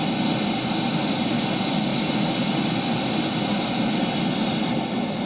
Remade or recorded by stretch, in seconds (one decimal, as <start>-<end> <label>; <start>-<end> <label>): 0.0-5.3 recorded